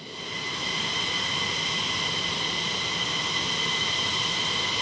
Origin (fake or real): real